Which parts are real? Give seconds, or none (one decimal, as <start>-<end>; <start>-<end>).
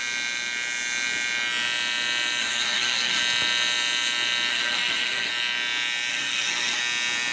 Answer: 0.0-2.4; 3.2-4.5; 5.3-6.1; 6.8-7.3